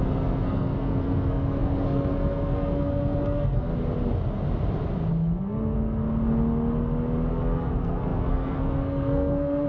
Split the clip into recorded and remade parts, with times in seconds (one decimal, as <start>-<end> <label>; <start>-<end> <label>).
0.0-3.7 remade; 3.7-5.1 recorded; 5.1-6.0 remade; 6.0-7.3 recorded; 7.3-9.7 remade